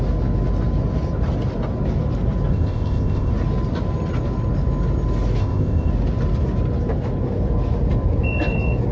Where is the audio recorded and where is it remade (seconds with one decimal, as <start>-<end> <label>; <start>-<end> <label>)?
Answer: 0.0-2.5 recorded; 2.5-3.3 remade; 3.3-5.4 recorded; 5.4-5.9 remade; 5.9-8.9 recorded